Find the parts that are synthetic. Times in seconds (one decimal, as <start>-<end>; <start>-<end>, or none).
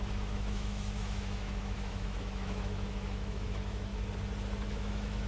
0.0-3.9; 4.7-5.3